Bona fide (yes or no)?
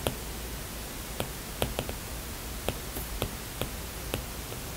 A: yes